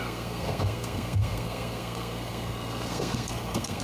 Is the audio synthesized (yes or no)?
yes